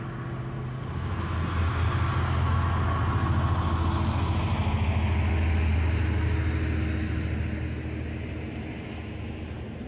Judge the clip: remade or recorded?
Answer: recorded